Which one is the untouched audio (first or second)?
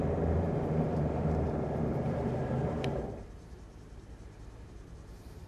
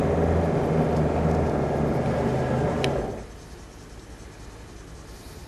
second